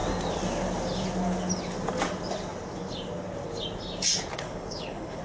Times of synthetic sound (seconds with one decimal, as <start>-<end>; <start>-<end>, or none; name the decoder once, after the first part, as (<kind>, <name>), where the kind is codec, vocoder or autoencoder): 4.3-5.2 (codec, HILCodec)